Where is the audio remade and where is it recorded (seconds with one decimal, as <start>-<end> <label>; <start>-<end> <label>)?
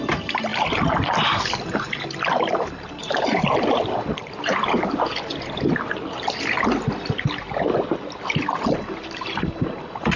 0.0-10.2 recorded